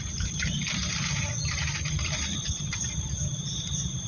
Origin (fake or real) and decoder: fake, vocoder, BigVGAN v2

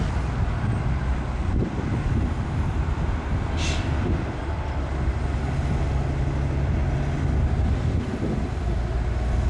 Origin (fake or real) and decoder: real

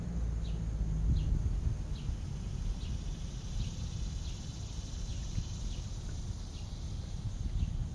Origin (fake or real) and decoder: real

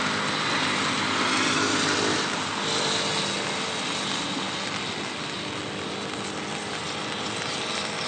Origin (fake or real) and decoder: real